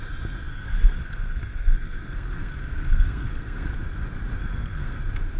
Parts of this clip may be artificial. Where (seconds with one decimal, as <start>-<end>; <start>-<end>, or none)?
0.5-3.7; 4.4-5.0